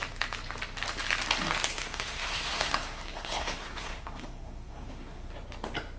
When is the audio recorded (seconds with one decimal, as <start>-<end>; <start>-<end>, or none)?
0.0-1.7; 5.3-6.0